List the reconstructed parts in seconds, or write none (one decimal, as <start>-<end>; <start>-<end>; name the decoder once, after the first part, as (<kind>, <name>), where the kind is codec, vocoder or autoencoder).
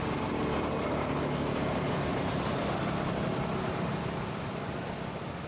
none